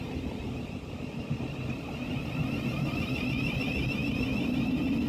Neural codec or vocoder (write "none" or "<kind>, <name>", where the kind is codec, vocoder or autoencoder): none